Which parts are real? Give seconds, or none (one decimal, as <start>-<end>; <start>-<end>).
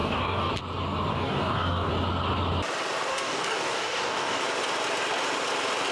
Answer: 0.5-1.1; 1.9-3.1; 4.4-5.9